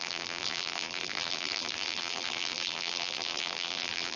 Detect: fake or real fake